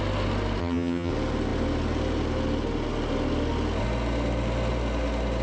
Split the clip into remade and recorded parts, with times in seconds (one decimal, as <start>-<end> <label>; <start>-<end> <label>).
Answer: 0.0-0.6 recorded; 0.6-1.1 remade; 1.1-5.4 recorded